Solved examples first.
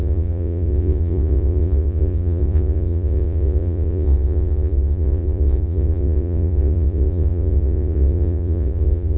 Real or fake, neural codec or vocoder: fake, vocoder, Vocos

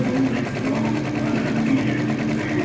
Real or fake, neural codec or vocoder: real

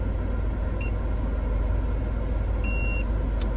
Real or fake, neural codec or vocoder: real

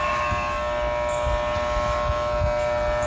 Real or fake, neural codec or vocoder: real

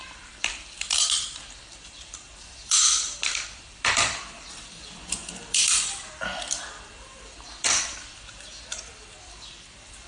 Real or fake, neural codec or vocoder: fake, vocoder, BigVGAN v2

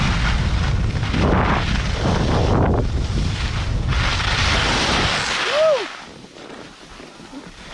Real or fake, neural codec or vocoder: real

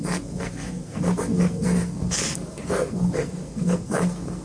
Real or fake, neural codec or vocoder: fake, codec, SNAC